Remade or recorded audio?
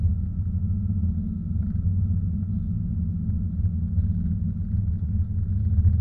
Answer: recorded